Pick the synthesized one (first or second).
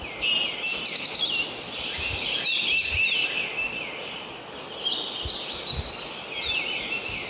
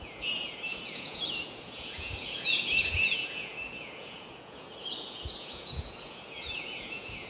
second